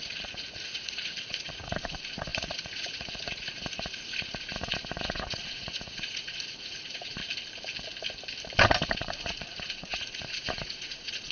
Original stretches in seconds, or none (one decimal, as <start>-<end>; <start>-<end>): 7.2-8.9